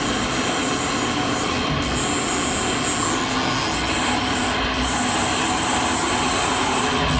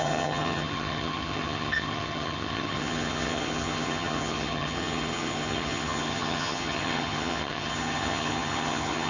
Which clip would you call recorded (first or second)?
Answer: first